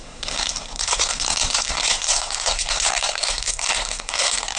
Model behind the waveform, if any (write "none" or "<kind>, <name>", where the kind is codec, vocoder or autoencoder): codec, SNAC